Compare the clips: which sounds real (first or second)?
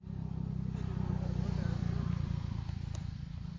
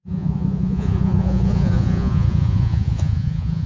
first